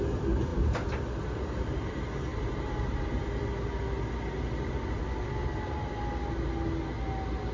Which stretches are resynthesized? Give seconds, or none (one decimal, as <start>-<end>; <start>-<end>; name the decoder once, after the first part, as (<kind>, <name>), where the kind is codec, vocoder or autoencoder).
none